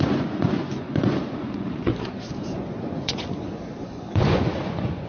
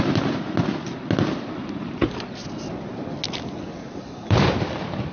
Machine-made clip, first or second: first